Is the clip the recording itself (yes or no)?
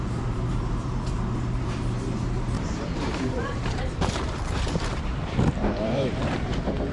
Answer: no